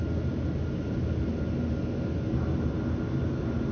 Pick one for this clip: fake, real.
real